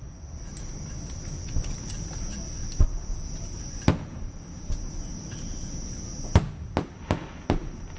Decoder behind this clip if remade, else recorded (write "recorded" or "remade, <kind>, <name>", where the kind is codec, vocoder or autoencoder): recorded